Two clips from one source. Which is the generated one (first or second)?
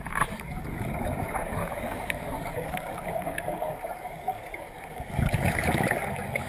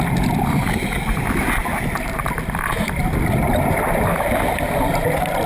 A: first